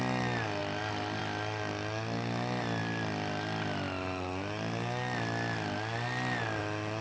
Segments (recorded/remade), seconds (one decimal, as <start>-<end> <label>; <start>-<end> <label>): 0.0-7.0 recorded